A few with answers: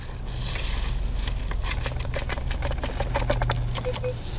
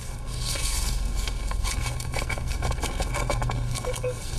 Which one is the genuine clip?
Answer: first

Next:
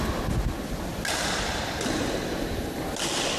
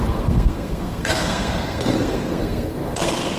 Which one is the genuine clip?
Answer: first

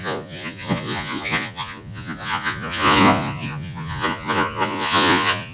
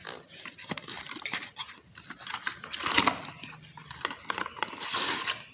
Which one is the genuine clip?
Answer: second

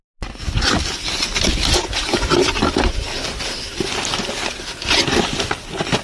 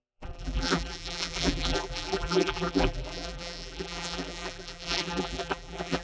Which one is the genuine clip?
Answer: first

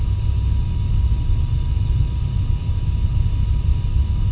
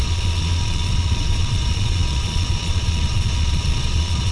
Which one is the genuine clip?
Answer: first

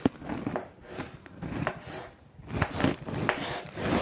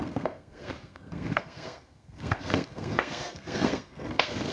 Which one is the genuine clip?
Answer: first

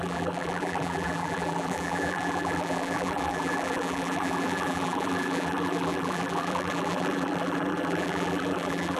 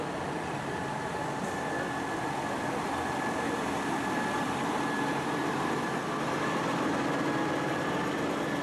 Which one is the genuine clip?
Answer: second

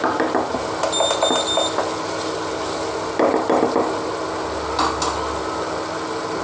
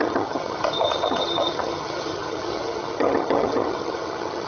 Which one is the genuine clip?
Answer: first